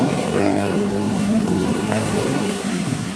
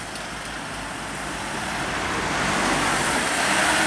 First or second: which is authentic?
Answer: second